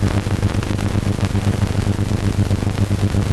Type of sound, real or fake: real